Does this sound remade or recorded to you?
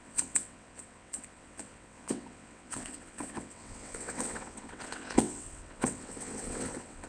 remade